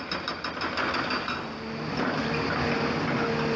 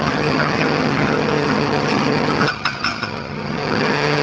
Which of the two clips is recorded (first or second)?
first